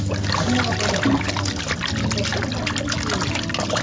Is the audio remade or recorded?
recorded